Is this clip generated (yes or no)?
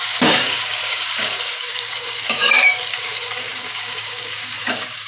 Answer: yes